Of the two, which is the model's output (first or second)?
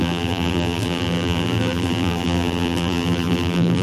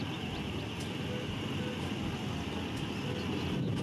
first